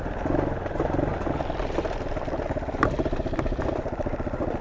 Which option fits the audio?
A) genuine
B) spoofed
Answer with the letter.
A